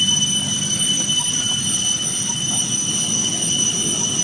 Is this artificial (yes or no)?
no